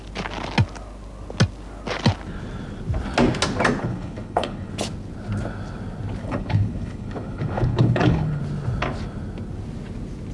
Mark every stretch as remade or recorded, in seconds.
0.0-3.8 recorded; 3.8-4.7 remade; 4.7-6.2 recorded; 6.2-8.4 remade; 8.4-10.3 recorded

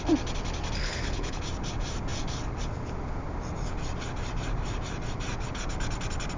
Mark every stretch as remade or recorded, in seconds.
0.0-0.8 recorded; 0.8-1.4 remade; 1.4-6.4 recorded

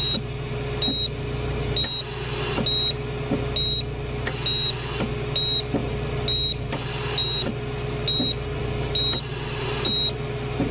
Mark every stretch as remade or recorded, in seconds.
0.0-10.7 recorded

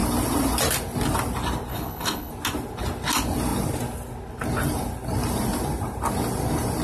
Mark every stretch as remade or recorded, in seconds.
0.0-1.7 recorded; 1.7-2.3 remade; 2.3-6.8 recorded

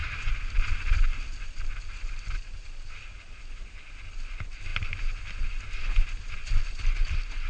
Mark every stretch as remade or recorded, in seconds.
0.0-7.5 recorded